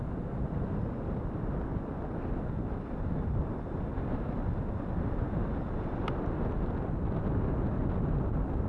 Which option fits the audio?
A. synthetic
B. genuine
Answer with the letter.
B